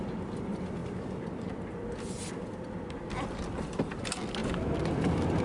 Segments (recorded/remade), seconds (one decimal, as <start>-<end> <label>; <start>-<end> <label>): 0.0-5.4 recorded